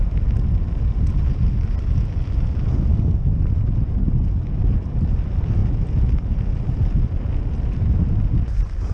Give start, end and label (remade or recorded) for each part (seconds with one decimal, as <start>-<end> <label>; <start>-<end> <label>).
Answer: 0.0-2.9 recorded; 2.9-3.4 remade; 3.4-8.9 recorded